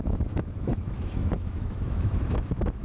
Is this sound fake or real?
fake